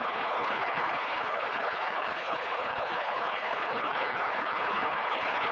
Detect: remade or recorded remade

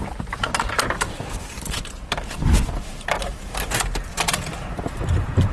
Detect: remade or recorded remade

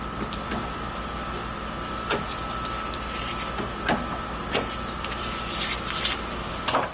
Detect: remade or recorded recorded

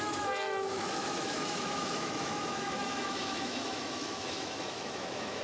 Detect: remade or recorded remade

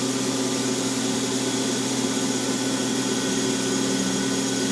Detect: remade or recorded recorded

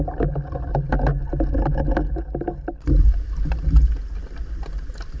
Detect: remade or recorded recorded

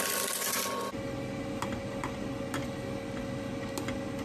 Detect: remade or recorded recorded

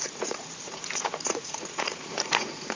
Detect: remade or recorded remade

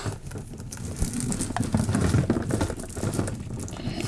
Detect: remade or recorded recorded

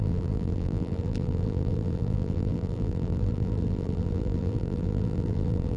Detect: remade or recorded remade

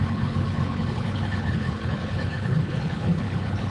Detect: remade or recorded remade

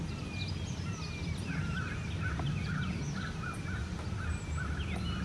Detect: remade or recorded recorded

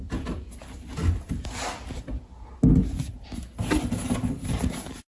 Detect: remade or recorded recorded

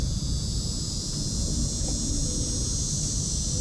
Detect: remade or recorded recorded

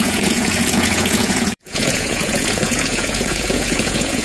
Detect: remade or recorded remade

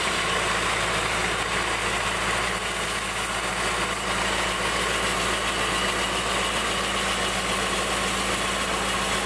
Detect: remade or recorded recorded